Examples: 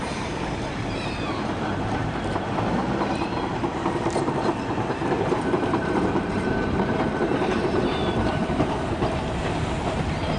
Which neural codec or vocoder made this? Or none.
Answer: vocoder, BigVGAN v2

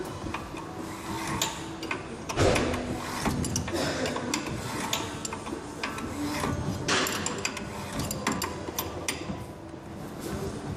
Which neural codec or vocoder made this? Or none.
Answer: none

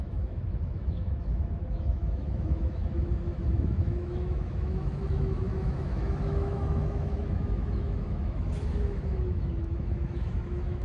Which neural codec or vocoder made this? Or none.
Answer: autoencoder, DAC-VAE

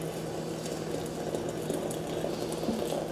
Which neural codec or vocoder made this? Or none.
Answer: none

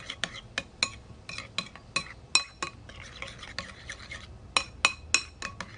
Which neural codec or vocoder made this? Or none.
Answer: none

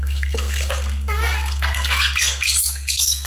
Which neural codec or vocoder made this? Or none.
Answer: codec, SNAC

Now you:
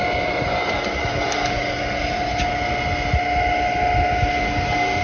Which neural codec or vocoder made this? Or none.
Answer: none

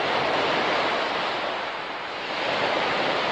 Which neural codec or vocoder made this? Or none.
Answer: none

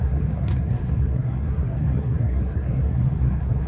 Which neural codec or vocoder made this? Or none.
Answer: codec, SNAC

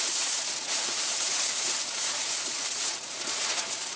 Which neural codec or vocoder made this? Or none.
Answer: vocoder, Vocos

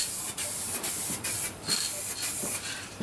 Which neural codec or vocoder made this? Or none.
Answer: vocoder, BigVGAN v2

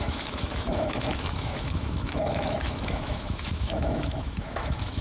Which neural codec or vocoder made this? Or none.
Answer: autoencoder, DAC-VAE